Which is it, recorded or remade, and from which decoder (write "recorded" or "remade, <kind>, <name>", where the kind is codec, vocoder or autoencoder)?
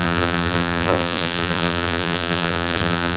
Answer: remade, vocoder, BigVGAN v2